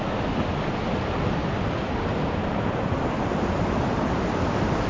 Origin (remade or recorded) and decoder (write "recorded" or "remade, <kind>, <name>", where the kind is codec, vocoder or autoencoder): recorded